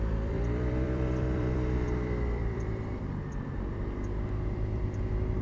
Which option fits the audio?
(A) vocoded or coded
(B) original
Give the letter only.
A